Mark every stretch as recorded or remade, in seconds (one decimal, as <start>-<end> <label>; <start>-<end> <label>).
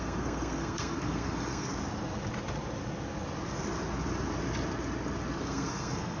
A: 0.0-1.7 remade; 1.7-5.4 recorded; 5.4-6.2 remade